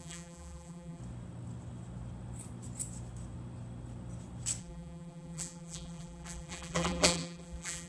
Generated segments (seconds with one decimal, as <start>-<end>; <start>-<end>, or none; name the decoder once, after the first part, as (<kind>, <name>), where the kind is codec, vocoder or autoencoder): 0.0-1.0 (vocoder, BigVGAN v2); 4.6-7.9